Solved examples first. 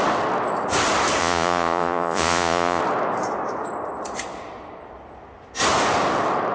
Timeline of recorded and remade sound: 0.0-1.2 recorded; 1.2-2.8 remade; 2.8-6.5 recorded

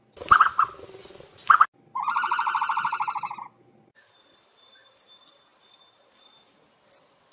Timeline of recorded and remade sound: 0.0-7.3 recorded

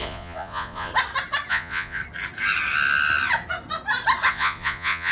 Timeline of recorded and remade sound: 0.0-0.9 remade; 0.9-1.5 recorded; 1.5-2.0 remade; 2.0-4.3 recorded; 4.3-5.1 remade

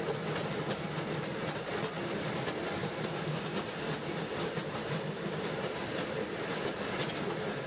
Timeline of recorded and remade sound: 0.0-7.7 recorded

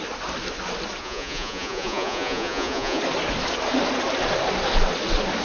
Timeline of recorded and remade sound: 0.0-1.0 recorded; 1.0-3.0 remade; 3.0-5.4 recorded

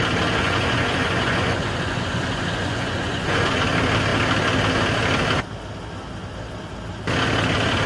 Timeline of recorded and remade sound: 0.0-0.4 recorded; 0.4-3.6 remade; 3.6-7.9 recorded

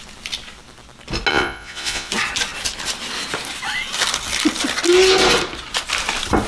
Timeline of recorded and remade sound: 0.0-1.3 recorded; 1.3-2.1 remade; 2.1-6.5 recorded

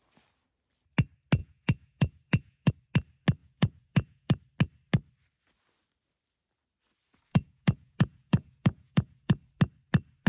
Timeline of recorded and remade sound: 0.0-1.4 recorded; 1.4-2.7 remade; 2.7-3.4 recorded; 3.4-4.4 remade; 4.4-7.3 recorded; 7.3-9.4 remade; 9.4-10.3 recorded